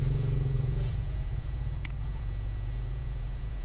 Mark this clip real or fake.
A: fake